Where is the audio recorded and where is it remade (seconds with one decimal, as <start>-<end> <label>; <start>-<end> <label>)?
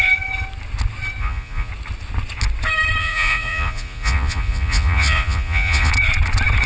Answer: 0.0-1.2 recorded; 1.2-1.7 remade; 1.7-3.0 recorded; 3.0-5.9 remade; 5.9-6.7 recorded